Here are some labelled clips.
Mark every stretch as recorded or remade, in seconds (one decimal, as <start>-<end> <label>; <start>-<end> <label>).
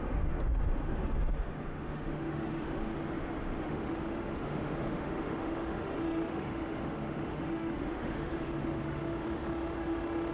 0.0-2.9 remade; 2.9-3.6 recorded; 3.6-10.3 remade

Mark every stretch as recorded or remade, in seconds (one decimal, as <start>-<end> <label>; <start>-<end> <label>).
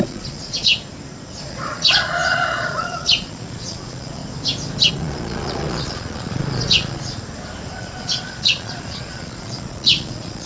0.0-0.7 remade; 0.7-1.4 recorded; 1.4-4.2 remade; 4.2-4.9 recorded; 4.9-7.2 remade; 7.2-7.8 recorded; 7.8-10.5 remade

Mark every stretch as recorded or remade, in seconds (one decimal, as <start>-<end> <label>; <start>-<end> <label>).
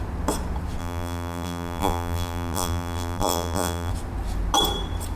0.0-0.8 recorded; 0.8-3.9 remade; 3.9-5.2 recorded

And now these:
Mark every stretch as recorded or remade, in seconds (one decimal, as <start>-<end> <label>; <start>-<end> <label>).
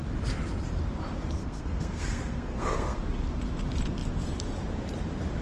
0.0-1.4 recorded; 1.4-3.0 remade; 3.0-5.4 recorded